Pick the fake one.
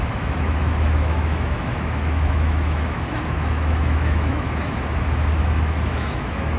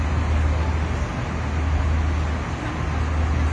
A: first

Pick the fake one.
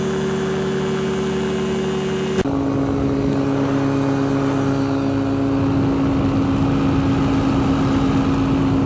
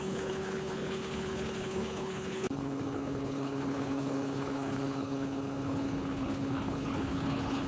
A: second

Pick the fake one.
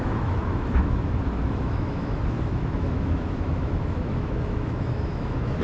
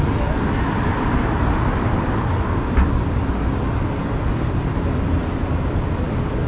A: first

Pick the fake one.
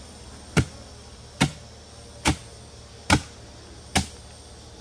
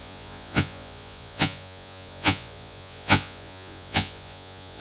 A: second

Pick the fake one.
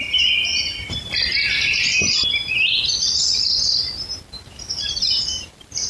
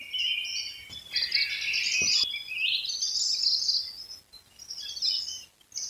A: first